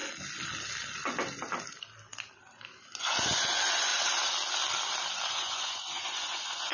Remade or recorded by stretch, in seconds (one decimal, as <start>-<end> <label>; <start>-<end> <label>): 0.0-3.0 recorded; 3.0-3.9 remade; 3.9-5.3 recorded; 5.3-6.7 remade